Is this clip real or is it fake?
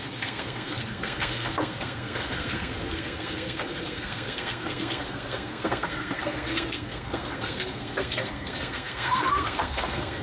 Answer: fake